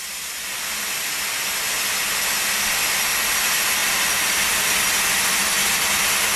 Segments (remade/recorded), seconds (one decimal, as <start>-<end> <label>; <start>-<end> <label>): 0.0-6.4 recorded